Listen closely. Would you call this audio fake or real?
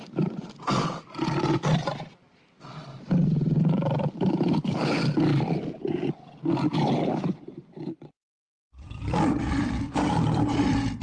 fake